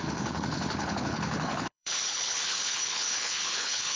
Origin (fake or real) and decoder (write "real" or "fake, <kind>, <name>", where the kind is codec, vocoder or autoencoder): fake, codec, HILCodec